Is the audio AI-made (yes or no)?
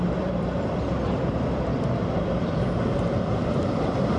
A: yes